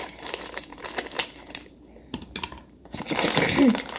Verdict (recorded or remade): remade